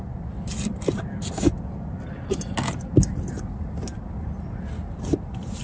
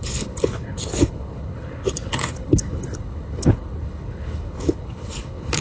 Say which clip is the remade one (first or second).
second